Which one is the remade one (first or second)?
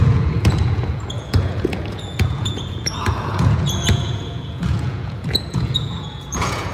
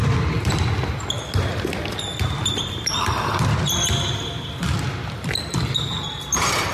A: first